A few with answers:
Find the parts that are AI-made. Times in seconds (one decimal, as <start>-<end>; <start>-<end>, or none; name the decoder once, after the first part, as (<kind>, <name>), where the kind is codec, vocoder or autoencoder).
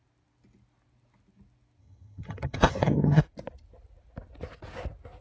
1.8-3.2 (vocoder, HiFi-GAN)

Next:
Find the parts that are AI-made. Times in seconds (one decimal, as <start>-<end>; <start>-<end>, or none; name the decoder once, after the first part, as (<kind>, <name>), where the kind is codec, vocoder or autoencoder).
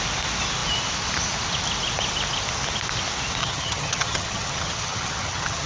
3.4-5.7 (vocoder, HiFi-GAN)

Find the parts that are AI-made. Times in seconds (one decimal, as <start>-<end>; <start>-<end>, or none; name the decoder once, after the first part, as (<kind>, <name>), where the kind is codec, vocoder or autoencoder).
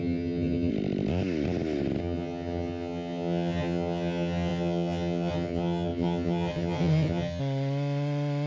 0.0-0.7 (vocoder, HiFi-GAN); 2.0-7.4